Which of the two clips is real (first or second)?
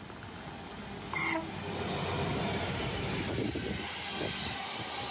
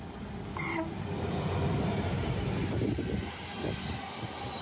first